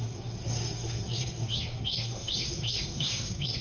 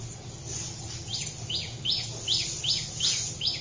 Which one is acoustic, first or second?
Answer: second